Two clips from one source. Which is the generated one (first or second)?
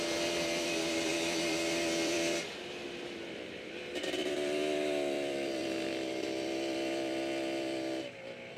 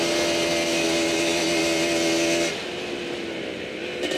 first